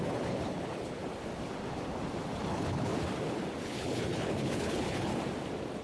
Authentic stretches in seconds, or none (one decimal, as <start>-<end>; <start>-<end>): 1.0-2.5; 2.9-3.6; 5.1-5.8